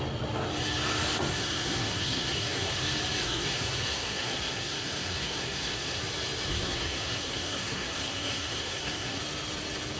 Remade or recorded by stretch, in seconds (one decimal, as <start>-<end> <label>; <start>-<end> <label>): 0.0-1.3 recorded; 1.3-2.8 remade; 2.8-3.2 recorded; 3.2-6.0 remade; 6.0-6.5 recorded; 6.5-9.2 remade; 9.2-10.0 recorded